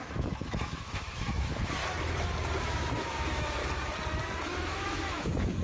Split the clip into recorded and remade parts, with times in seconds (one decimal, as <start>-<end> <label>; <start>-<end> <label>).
0.0-1.8 remade; 1.8-2.6 recorded; 2.6-3.6 remade; 3.6-4.4 recorded; 4.4-5.6 remade